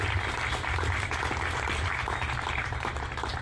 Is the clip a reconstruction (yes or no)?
no